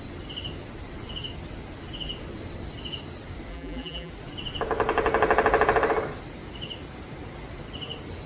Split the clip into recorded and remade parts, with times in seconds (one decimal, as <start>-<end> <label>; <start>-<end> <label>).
0.0-3.5 recorded; 3.5-4.1 remade; 4.1-8.3 recorded